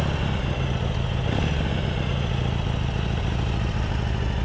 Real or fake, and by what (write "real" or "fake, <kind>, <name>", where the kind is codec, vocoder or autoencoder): real